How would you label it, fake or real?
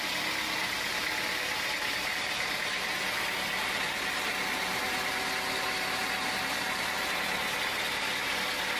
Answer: real